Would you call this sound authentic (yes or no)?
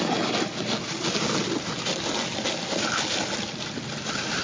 yes